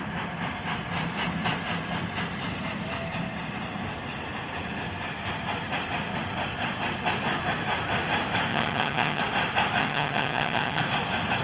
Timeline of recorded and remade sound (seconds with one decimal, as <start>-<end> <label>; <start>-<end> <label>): 0.0-8.5 recorded; 8.5-9.2 remade; 9.2-9.8 recorded; 9.8-10.8 remade; 10.8-11.4 recorded